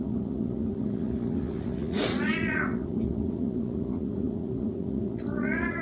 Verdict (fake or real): fake